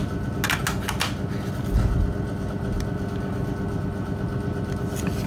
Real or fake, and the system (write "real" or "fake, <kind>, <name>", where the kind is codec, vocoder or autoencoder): real